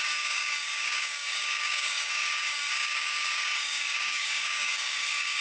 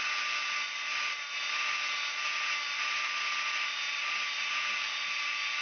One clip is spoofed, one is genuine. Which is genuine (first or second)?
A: second